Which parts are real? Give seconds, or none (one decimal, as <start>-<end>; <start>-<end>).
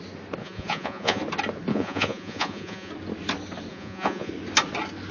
0.0-0.4; 1.2-1.7; 2.9-3.7; 4.3-5.1